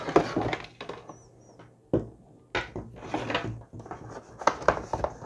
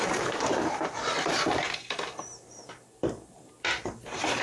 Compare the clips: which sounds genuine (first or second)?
first